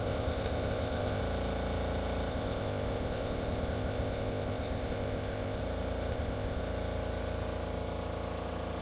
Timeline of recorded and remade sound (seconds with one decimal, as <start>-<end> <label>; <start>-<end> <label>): 0.0-1.2 remade; 1.2-2.3 recorded; 2.3-5.6 remade; 5.6-6.1 recorded; 6.1-6.6 remade; 6.6-8.8 recorded